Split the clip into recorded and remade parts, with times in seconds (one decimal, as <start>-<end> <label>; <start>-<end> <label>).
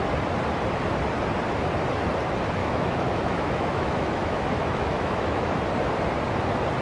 0.0-2.6 recorded; 2.6-5.6 remade; 5.6-6.8 recorded